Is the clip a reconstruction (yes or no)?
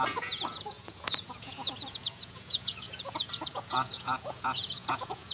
yes